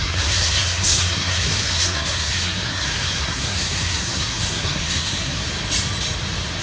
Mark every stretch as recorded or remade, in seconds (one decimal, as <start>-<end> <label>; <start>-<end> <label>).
0.0-5.4 remade; 5.4-6.6 recorded